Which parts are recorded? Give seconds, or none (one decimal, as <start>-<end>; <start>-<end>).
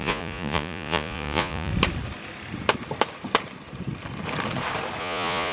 1.7-5.0